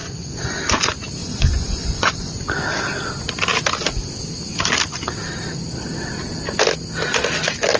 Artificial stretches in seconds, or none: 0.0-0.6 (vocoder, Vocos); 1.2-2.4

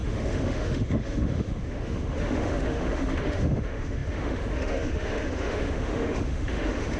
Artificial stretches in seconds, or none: 0.0-7.0 (autoencoder, DAC-VAE)

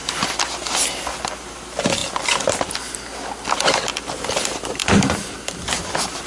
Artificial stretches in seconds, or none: none

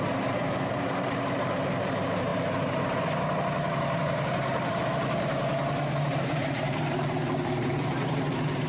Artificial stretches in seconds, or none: 0.0-8.7 (vocoder, BigVGAN v2)